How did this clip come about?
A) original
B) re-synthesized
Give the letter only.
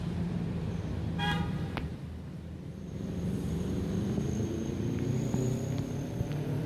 B